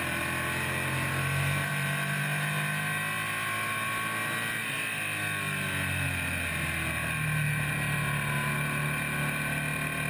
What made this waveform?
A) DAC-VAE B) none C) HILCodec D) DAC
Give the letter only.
B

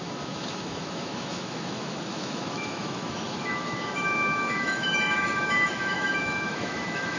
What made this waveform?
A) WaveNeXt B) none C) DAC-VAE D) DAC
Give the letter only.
C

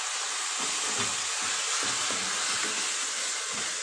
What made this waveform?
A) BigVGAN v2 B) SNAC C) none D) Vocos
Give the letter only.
C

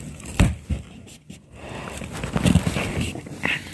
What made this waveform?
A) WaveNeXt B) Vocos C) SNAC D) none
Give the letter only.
D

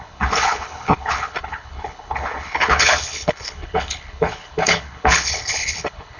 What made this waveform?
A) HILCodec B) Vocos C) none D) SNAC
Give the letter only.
A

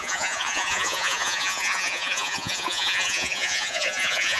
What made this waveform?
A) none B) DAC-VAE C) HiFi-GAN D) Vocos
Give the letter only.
D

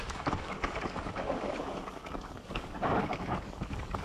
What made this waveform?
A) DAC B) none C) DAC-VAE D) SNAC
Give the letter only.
A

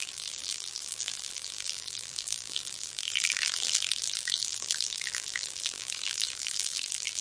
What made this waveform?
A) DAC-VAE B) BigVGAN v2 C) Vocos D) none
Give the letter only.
B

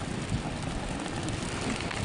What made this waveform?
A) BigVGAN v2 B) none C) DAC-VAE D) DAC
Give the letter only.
A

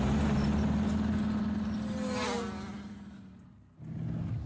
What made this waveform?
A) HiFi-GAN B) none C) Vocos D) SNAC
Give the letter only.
B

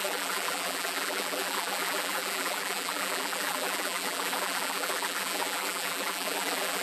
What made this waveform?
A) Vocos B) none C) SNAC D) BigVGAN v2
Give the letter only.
D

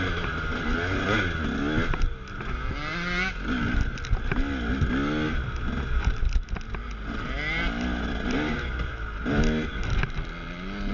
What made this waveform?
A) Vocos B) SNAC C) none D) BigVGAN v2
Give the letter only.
C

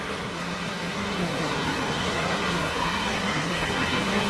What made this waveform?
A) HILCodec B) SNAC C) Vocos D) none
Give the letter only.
B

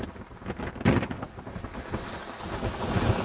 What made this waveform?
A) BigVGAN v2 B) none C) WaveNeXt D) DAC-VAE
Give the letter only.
B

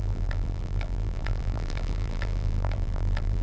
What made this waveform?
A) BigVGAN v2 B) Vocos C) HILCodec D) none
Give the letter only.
A